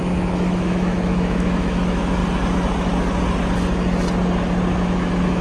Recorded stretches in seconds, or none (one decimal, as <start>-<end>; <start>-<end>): 2.2-4.8